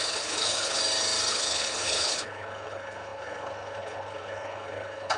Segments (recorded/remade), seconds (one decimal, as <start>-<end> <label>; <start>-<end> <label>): 0.0-0.8 remade; 0.8-1.3 recorded; 1.3-5.2 remade